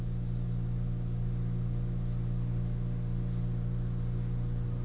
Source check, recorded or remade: recorded